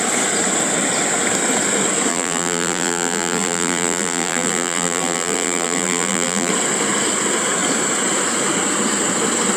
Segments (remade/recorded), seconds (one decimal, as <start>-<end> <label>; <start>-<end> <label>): 0.0-2.1 recorded; 2.1-6.5 remade; 6.5-9.6 recorded